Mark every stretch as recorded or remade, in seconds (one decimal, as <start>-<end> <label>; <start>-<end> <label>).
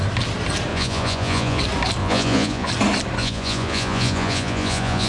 0.0-0.7 recorded; 0.7-1.6 remade; 1.6-2.0 recorded; 2.0-2.7 remade; 2.7-3.2 recorded; 3.2-5.1 remade